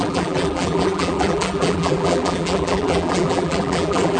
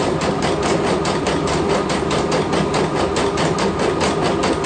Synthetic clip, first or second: first